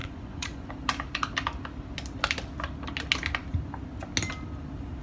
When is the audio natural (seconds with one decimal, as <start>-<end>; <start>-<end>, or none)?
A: 0.7-5.0